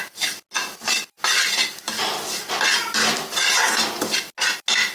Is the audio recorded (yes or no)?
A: yes